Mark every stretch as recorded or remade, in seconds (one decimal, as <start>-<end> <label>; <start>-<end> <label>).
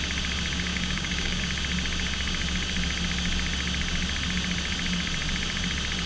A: 0.0-0.7 recorded; 0.7-1.4 remade; 1.4-6.1 recorded